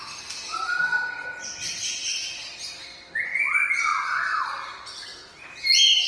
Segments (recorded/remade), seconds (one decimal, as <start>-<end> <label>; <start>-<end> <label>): 0.0-3.9 recorded; 3.9-4.5 remade; 4.5-6.1 recorded